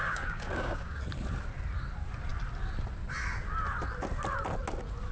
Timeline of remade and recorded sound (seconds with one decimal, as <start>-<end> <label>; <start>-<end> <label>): 0.0-1.0 remade; 1.0-5.1 recorded